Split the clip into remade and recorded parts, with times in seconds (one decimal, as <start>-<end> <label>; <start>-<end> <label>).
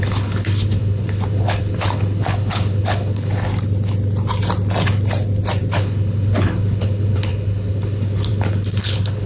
0.0-3.5 remade; 3.5-5.7 recorded; 5.7-9.3 remade